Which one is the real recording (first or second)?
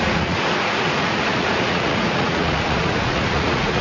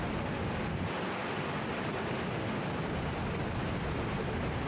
second